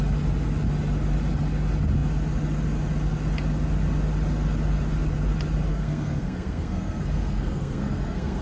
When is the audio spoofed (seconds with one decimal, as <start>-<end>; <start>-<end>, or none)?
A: 5.7-8.4